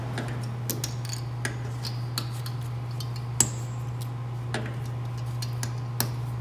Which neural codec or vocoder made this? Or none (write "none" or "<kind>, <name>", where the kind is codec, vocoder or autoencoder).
none